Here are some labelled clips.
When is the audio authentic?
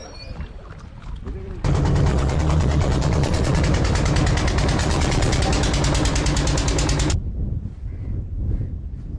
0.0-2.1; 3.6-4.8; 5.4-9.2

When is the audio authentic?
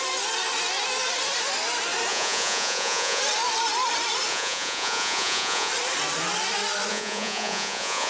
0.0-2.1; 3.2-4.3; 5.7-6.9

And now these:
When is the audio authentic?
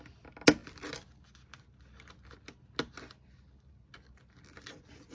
0.0-5.1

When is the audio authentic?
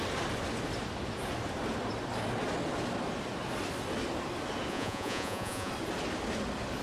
0.0-4.7; 5.7-6.8